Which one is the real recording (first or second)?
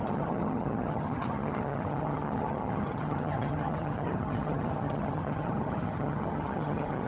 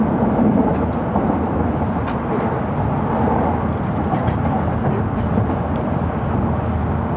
second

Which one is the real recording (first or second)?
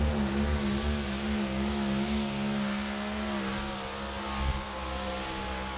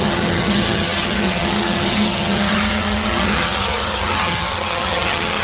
first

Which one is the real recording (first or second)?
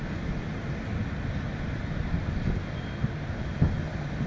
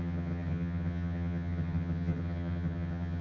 first